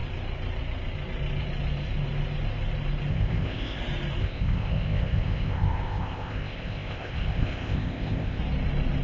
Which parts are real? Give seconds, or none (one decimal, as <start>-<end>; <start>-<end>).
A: 0.0-3.1; 3.8-4.2; 8.4-9.0

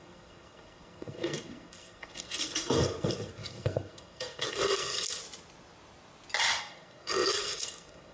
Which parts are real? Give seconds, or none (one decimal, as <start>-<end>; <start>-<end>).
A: 5.2-6.6

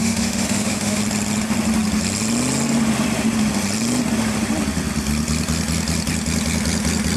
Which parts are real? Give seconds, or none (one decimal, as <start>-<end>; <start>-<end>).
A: 1.0-7.2

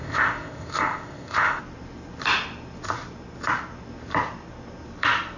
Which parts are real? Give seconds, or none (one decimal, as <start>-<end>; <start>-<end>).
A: 1.6-5.4

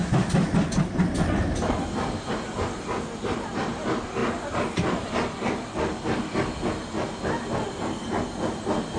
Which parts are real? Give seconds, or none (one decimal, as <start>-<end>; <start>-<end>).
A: 0.0-9.0

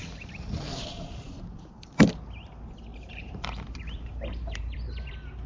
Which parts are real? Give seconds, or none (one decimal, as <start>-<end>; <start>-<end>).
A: 1.3-2.9; 5.1-5.5

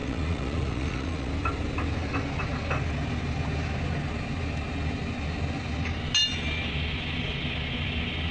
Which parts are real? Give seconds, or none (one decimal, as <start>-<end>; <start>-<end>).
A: 1.3-8.3